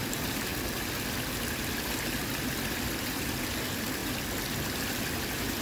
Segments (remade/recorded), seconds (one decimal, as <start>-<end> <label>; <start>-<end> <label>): 0.0-0.5 remade; 0.5-1.1 recorded; 1.1-4.0 remade; 4.0-5.0 recorded; 5.0-5.6 remade